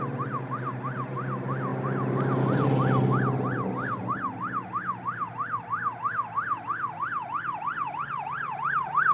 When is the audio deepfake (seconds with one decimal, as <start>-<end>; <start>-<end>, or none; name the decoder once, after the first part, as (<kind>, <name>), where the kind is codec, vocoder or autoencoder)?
1.7-2.4 (vocoder, BigVGAN v2)